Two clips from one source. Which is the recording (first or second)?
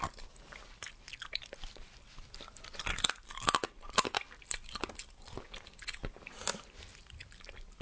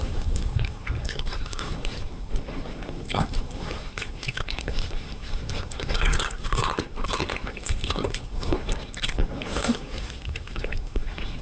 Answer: first